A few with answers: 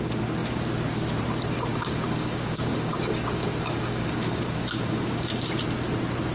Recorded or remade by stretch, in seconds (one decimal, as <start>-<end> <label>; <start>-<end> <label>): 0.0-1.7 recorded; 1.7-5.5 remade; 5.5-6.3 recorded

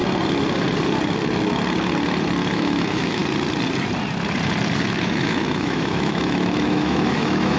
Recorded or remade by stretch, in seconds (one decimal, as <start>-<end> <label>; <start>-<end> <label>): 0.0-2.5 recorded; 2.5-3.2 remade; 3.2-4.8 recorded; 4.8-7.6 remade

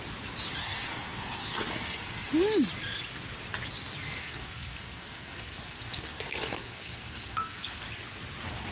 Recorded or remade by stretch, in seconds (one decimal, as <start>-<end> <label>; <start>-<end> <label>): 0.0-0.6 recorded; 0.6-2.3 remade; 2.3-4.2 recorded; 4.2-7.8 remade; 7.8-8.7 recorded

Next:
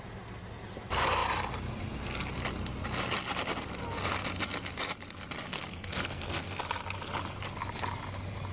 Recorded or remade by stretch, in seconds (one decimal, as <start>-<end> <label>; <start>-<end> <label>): 0.0-5.5 recorded; 5.5-6.6 remade; 6.6-8.5 recorded

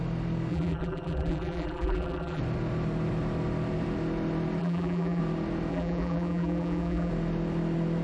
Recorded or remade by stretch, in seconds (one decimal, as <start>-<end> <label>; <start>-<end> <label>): 0.0-0.5 recorded; 0.5-2.4 remade; 2.4-4.6 recorded; 4.6-5.2 remade; 5.2-5.7 recorded; 5.7-7.1 remade; 7.1-8.0 recorded

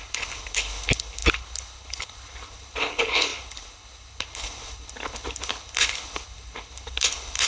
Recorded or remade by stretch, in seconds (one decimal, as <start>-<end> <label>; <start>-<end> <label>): 0.0-7.5 remade